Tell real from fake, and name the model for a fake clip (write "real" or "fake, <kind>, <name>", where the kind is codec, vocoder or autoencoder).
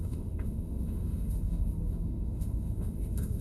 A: fake, autoencoder, DAC-VAE